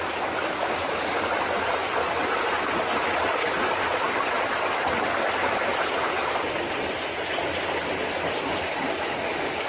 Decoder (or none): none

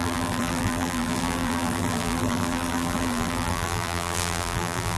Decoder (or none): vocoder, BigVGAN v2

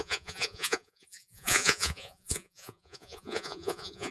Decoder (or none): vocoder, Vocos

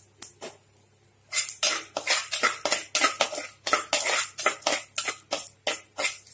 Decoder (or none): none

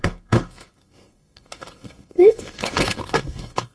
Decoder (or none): codec, SNAC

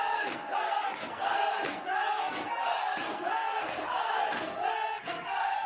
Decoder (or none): codec, SNAC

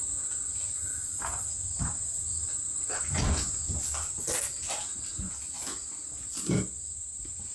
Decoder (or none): none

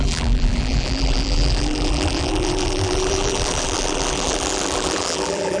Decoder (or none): vocoder, BigVGAN v2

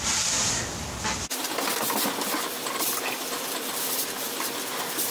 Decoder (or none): vocoder, BigVGAN v2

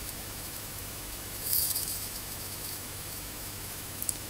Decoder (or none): autoencoder, DAC-VAE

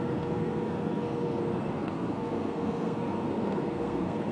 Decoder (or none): codec, SNAC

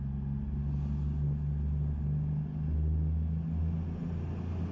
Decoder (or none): none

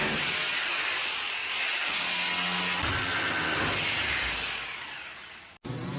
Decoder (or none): none